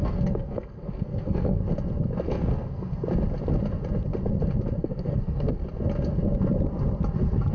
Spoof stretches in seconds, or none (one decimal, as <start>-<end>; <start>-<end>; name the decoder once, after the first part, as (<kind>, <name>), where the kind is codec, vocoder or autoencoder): 0.0-1.6 (codec, SNAC); 2.2-2.9; 4.8-5.6